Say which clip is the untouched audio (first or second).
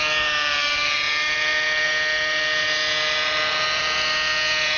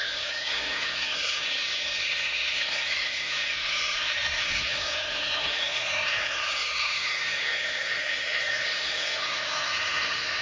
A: first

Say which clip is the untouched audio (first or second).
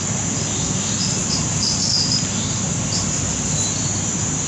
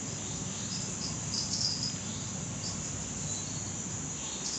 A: second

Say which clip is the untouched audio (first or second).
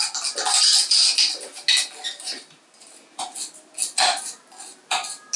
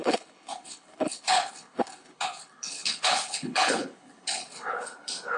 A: first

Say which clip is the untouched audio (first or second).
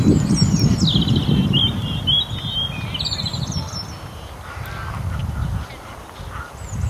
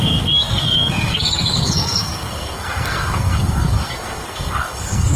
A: first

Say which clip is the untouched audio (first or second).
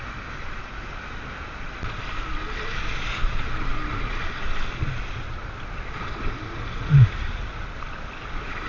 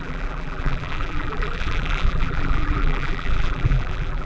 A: first